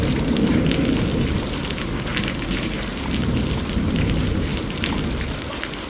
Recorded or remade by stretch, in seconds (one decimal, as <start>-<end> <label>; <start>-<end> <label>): 0.0-0.5 remade; 0.5-3.6 recorded; 3.6-4.5 remade; 4.5-5.2 recorded; 5.2-5.9 remade